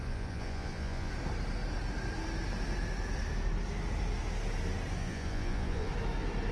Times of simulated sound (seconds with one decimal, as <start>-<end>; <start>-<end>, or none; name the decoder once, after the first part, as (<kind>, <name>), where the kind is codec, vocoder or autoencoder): 0.0-1.1 (vocoder, Vocos); 5.0-5.9